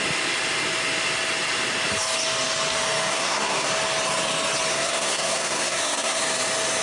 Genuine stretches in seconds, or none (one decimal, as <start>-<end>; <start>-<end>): 0.0-3.1; 3.7-4.7; 6.2-6.8